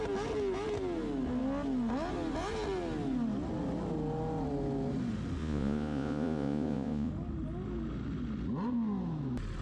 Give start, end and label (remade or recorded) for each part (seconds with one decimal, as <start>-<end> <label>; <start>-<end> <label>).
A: 0.0-5.4 recorded; 5.4-7.1 remade; 7.1-9.6 recorded